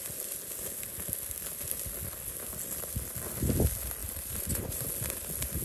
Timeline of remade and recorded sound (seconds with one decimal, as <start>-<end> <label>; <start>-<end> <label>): 0.0-4.0 recorded; 4.0-4.8 remade; 4.8-5.6 recorded